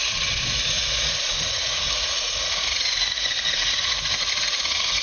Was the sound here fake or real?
fake